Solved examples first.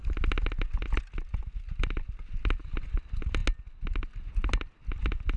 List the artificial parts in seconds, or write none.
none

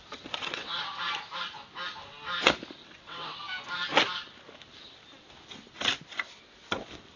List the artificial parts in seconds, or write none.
0.4-1.0 (vocoder, WaveNeXt); 2.8-3.4

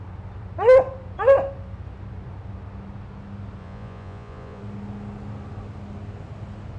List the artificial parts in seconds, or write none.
3.6-4.6 (vocoder, Vocos)

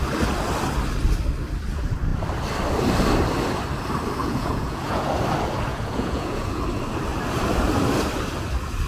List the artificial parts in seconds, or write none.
4.2-5.1 (vocoder, Vocos); 5.7-6.6

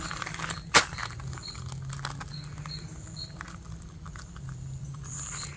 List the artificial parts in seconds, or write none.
0.0-1.0 (vocoder, BigVGAN v2); 4.4-5.6